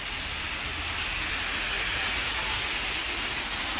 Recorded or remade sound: recorded